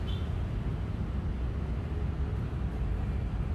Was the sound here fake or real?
real